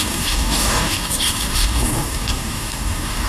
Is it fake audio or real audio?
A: fake